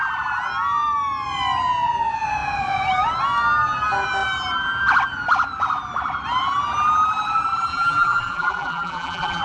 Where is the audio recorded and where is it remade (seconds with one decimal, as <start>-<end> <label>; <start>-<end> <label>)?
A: 0.0-7.7 recorded; 7.7-9.4 remade